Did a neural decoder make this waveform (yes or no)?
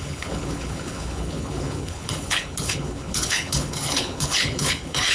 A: yes